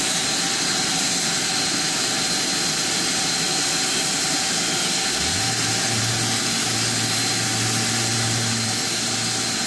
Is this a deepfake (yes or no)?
no